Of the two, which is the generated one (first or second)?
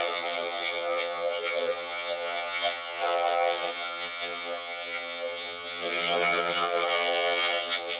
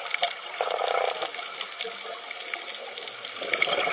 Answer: first